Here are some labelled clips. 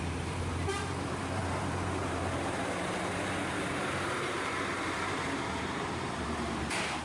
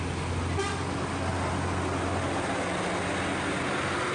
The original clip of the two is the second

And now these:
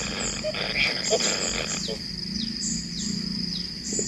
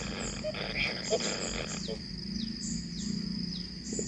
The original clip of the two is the second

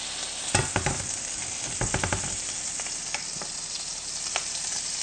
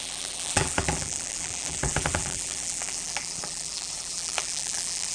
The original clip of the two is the first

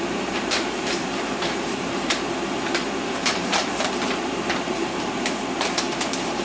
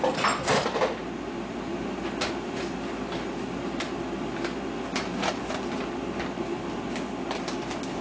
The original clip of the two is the second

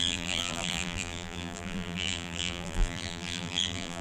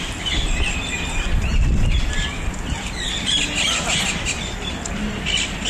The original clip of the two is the second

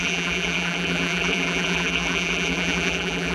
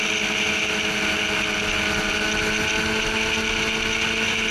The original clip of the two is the second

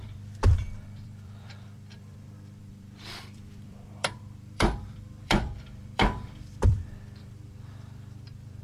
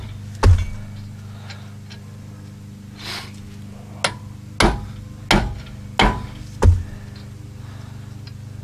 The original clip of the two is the second